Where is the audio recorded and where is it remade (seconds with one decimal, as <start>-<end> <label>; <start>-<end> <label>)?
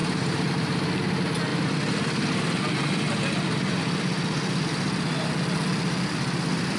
0.0-0.5 remade; 0.5-6.8 recorded